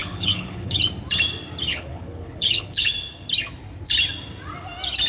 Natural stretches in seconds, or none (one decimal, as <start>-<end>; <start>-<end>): 0.8-1.7; 2.9-5.1